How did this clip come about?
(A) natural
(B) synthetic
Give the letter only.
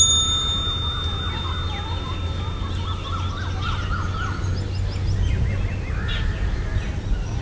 A